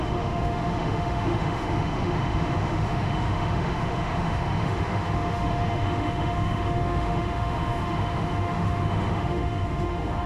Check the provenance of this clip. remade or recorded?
remade